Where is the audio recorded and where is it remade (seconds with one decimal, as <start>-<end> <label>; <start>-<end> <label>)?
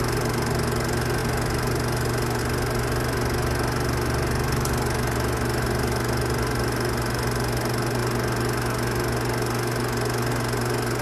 0.0-11.0 recorded